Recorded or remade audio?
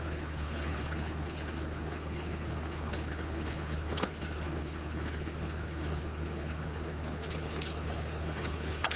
remade